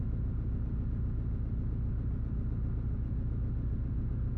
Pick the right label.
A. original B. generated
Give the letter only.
A